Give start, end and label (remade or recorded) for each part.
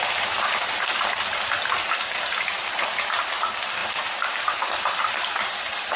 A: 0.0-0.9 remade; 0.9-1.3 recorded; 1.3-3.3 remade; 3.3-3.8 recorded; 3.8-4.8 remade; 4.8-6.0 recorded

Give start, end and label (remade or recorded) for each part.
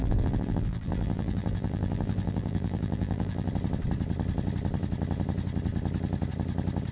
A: 0.0-3.5 remade; 3.5-6.9 recorded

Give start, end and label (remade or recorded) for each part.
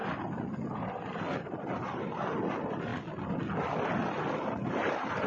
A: 0.0-0.7 recorded; 0.7-2.9 remade; 2.9-4.7 recorded; 4.7-5.3 remade